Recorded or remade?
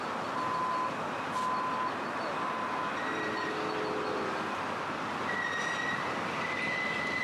recorded